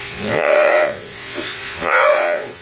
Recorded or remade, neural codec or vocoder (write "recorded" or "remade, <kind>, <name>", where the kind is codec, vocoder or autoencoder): remade, vocoder, WaveNeXt